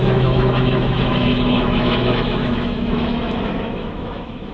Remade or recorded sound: remade